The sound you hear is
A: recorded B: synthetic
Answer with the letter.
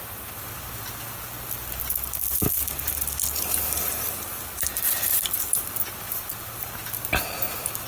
A